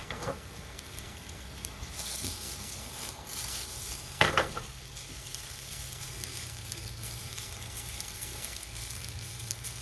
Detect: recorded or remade remade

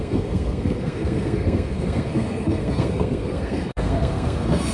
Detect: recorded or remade remade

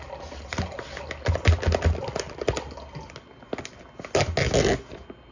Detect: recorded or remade recorded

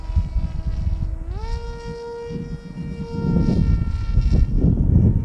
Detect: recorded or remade recorded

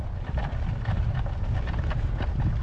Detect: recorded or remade recorded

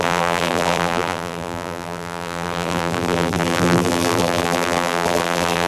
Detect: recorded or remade remade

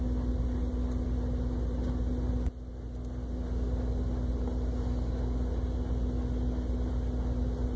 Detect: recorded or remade recorded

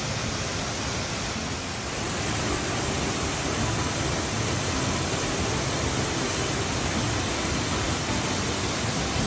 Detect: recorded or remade recorded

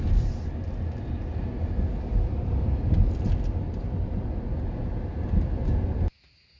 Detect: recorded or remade recorded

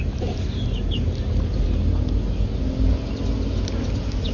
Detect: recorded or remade recorded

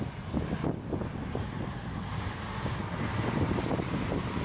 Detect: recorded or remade recorded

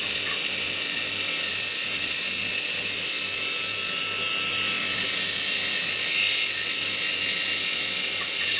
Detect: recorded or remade recorded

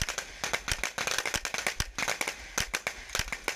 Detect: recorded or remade recorded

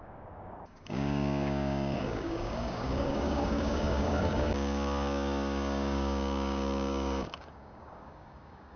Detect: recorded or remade remade